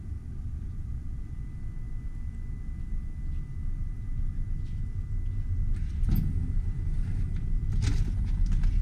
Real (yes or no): yes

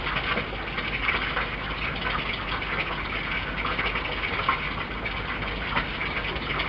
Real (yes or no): yes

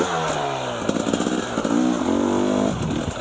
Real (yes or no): yes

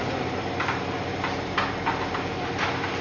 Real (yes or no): yes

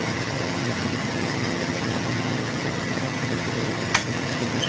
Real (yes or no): no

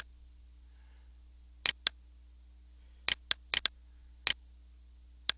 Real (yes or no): yes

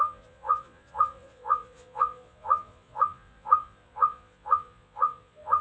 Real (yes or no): no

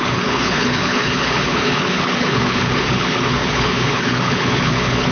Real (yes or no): no